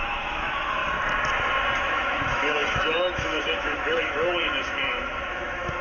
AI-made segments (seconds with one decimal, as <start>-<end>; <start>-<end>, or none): 0.0-0.8; 1.8-5.8

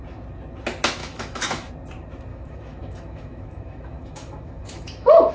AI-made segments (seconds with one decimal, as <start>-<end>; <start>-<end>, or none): 1.0-1.7; 2.3-5.3

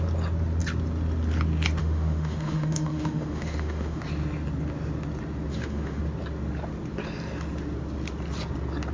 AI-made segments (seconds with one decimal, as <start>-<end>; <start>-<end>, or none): 1.8-4.0; 5.5-6.0

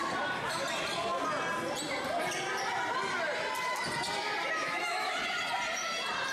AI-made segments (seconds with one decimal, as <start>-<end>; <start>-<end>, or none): 4.6-5.2

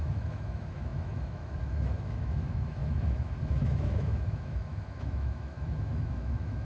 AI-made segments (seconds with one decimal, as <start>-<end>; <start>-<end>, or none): 0.0-6.6

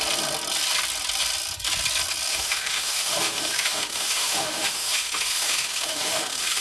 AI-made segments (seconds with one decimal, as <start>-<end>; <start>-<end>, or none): 2.3-6.6

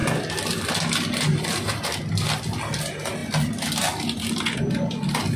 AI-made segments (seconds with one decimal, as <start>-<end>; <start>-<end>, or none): none